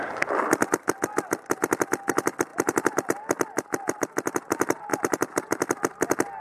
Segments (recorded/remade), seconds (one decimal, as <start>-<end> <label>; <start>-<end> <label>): 0.0-2.5 recorded; 2.5-4.0 remade; 4.0-4.9 recorded; 4.9-5.5 remade; 5.5-6.4 recorded